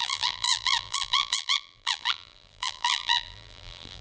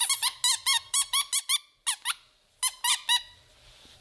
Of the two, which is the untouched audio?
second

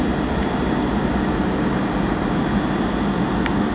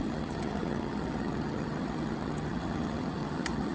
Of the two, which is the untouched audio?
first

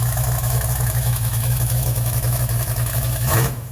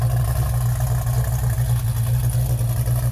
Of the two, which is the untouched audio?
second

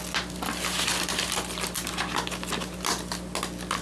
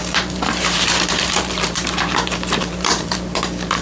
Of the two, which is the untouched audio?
first